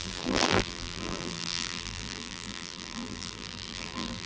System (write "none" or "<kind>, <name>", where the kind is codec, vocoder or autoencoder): vocoder, BigVGAN v2